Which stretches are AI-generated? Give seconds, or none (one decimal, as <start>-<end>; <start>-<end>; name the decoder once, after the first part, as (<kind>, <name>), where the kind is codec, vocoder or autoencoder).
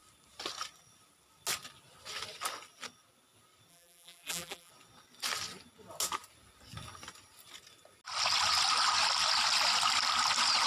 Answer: 3.7-4.7 (vocoder, BigVGAN v2)